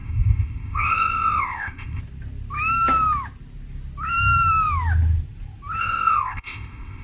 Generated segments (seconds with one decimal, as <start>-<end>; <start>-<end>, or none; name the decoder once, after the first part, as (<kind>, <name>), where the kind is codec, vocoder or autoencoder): 0.0-2.0 (codec, ZipCodec); 5.8-7.0